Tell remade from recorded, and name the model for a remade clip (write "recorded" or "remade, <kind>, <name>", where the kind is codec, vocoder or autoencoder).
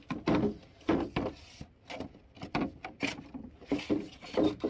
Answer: recorded